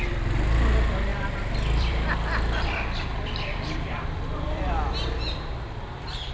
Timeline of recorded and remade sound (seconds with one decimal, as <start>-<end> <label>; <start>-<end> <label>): 0.0-1.1 recorded; 1.1-4.9 remade; 4.9-6.3 recorded

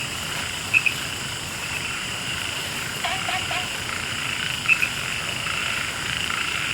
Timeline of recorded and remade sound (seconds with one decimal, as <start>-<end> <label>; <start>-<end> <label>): 0.0-1.6 recorded; 1.6-4.1 remade; 4.1-5.6 recorded; 5.6-6.7 remade

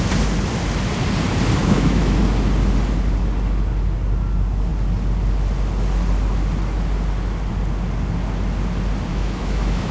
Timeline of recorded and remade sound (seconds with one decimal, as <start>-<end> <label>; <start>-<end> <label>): 0.0-1.6 recorded; 1.6-2.2 remade; 2.2-9.1 recorded; 9.1-9.9 remade